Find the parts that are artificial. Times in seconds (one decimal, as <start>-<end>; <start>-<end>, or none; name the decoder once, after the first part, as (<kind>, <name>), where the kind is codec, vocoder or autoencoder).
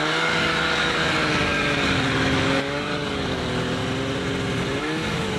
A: 0.0-3.8 (codec, DAC); 4.8-5.4